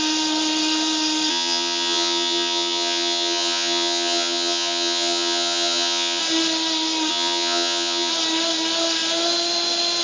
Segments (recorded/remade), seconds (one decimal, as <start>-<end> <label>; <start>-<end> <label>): 0.0-1.3 recorded; 1.3-6.2 remade; 6.2-7.1 recorded; 7.1-8.1 remade; 8.1-10.0 recorded